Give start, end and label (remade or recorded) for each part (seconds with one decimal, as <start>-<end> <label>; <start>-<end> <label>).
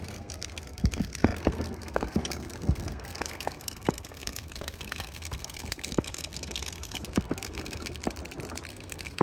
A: 0.0-8.0 remade; 8.0-8.7 recorded; 8.7-9.2 remade